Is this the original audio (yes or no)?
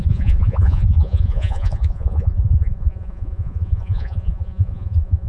no